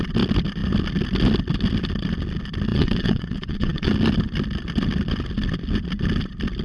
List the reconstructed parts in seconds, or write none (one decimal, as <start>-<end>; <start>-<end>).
2.7-3.9